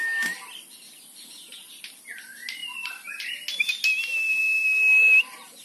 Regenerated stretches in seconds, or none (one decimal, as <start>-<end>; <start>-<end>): 2.6-3.3

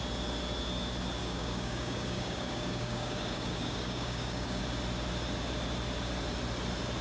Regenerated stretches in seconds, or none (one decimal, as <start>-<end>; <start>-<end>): 1.2-4.6